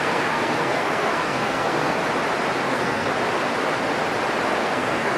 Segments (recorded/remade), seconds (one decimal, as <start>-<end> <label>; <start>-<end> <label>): 0.0-2.0 remade; 2.0-2.7 recorded; 2.7-3.1 remade; 3.1-4.6 recorded; 4.6-5.2 remade